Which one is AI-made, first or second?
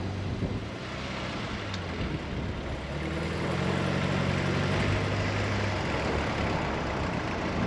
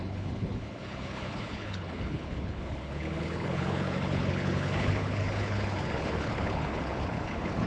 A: second